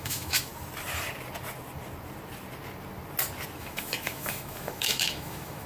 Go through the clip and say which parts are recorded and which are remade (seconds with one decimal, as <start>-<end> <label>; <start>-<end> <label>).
0.0-0.5 remade; 0.5-3.6 recorded; 3.6-5.7 remade

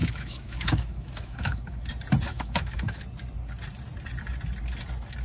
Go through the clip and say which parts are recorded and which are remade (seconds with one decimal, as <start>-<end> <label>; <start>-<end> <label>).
0.0-1.9 remade; 1.9-2.3 recorded; 2.3-3.0 remade; 3.0-5.2 recorded

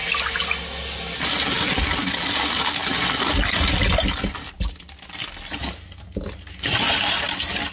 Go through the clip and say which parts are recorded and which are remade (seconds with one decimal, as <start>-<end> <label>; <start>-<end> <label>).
0.0-7.7 recorded

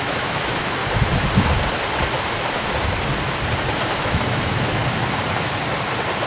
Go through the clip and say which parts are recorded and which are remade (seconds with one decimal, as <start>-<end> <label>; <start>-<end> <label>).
0.0-0.8 remade; 0.8-4.0 recorded; 4.0-4.8 remade; 4.8-6.3 recorded